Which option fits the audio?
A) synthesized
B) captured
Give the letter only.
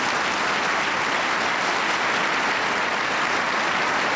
B